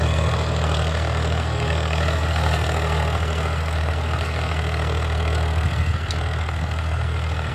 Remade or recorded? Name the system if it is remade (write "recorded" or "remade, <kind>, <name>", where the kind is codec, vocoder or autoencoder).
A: remade, codec, SNAC